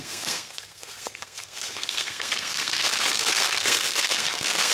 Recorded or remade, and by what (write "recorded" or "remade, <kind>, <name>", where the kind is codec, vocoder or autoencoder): remade, codec, SNAC